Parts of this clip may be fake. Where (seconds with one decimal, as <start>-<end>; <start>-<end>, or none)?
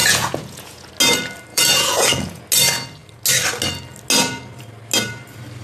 0.0-0.9; 1.5-2.4